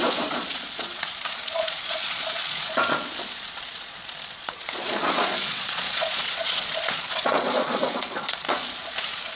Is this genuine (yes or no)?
no